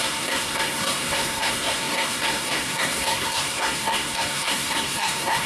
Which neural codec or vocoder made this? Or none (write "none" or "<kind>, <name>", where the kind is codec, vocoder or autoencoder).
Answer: codec, SNAC